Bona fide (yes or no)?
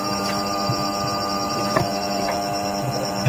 no